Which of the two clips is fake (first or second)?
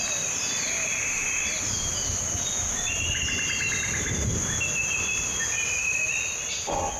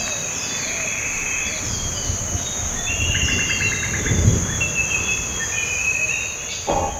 first